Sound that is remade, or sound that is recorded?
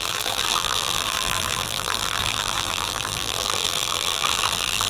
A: remade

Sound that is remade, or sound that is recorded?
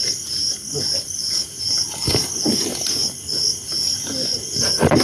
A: recorded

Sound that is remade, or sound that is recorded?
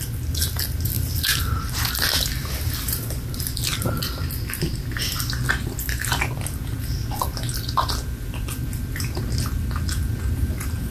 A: recorded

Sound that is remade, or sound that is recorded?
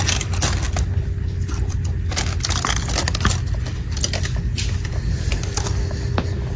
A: recorded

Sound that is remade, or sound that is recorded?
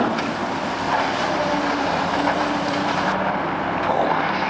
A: remade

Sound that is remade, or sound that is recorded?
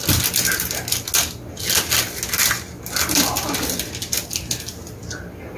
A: recorded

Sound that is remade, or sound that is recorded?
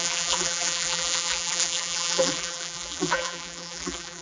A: remade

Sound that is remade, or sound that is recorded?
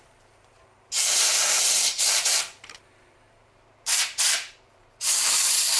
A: remade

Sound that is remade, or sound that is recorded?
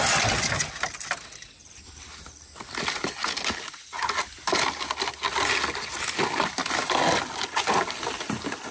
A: recorded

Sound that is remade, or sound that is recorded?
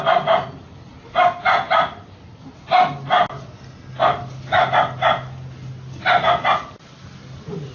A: recorded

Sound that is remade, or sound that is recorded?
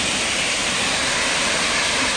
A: remade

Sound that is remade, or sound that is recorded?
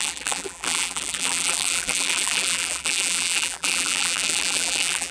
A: remade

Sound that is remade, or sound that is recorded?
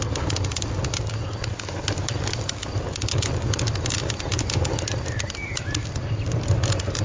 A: recorded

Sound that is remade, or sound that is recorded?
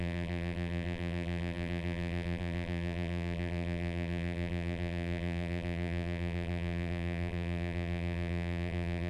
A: remade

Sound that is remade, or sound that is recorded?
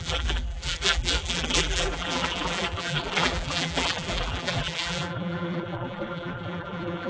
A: remade